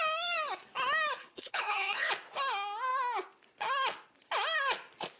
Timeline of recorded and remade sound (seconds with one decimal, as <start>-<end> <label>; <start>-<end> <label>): 0.0-1.2 recorded; 1.2-2.1 remade; 2.1-5.2 recorded